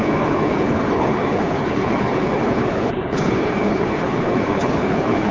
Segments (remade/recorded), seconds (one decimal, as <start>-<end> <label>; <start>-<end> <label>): 0.0-5.3 remade